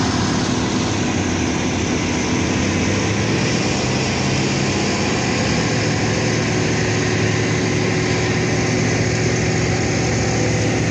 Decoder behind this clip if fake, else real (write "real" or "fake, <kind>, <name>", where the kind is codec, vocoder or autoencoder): real